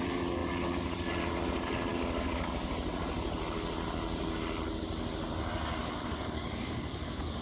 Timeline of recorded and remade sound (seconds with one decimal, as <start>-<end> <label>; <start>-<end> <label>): 0.0-1.9 recorded; 1.9-2.7 remade; 2.7-5.8 recorded; 5.8-7.4 remade